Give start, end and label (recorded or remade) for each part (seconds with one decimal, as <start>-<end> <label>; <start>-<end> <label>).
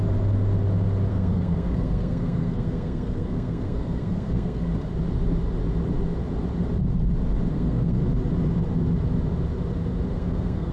0.0-1.1 recorded; 1.1-4.7 remade; 4.7-7.5 recorded; 7.5-8.0 remade; 8.0-10.1 recorded; 10.1-10.7 remade